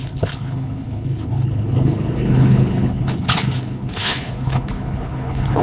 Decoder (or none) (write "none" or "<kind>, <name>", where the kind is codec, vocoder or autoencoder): codec, HILCodec